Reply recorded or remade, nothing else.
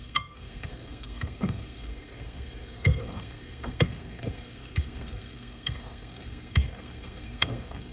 remade